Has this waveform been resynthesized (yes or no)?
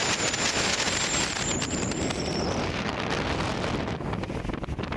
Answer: no